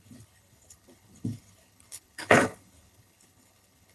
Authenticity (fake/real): fake